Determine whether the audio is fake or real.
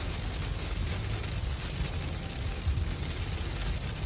real